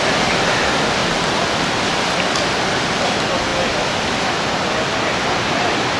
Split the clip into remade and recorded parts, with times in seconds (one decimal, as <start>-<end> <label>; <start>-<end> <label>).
0.0-3.5 recorded; 3.5-4.2 remade; 4.2-6.0 recorded